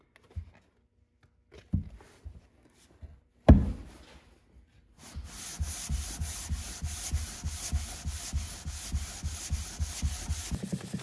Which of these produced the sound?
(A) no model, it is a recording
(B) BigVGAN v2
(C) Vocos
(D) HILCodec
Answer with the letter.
A